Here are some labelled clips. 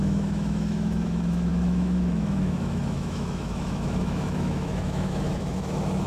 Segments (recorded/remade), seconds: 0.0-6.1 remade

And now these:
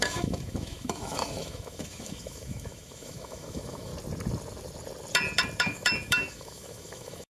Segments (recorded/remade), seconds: 0.0-3.9 remade; 3.9-5.6 recorded; 5.6-7.3 remade

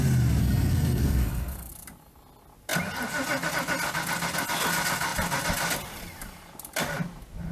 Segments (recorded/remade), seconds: 0.0-0.4 recorded; 0.4-1.7 remade; 1.7-7.5 recorded

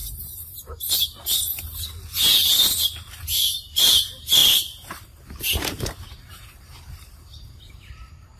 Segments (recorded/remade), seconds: 0.0-3.2 recorded; 3.2-8.4 remade

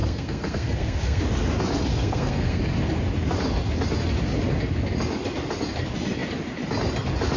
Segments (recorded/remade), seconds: 0.0-1.2 remade; 1.2-1.9 recorded; 1.9-2.6 remade; 2.6-7.4 recorded

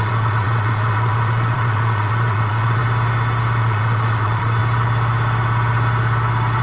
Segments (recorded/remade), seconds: 0.0-2.8 remade; 2.8-3.6 recorded; 3.6-4.6 remade; 4.6-6.6 recorded